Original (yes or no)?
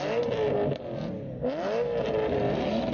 yes